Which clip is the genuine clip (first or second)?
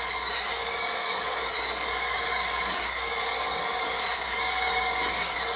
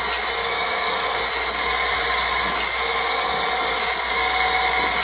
second